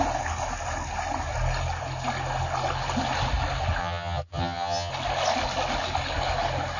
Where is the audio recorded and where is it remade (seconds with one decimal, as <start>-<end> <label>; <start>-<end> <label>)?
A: 0.0-3.8 recorded; 3.8-4.9 remade; 4.9-6.8 recorded